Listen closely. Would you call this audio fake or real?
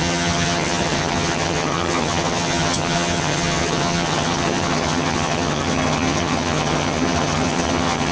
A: fake